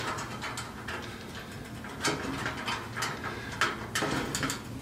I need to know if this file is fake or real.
real